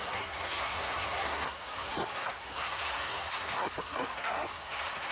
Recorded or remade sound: remade